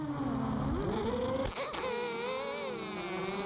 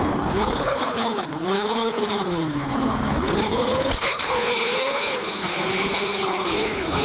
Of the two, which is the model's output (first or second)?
second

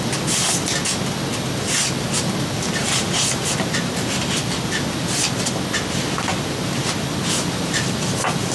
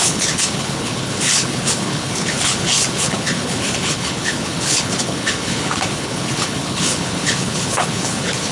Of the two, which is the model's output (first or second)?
second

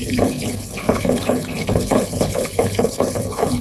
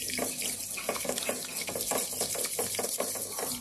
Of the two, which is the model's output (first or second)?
first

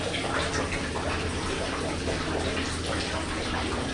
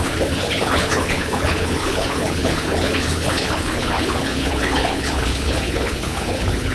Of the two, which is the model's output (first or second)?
second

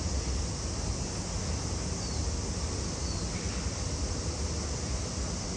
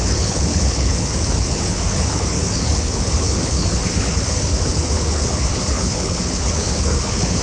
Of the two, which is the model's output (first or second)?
second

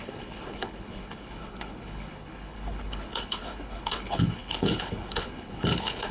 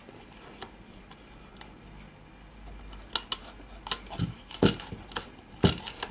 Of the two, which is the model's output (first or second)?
first